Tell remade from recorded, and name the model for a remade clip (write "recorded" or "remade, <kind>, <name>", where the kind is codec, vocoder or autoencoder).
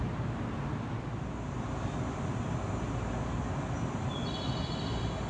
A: recorded